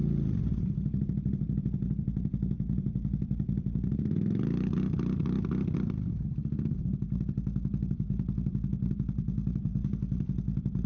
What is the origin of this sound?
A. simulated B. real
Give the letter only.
B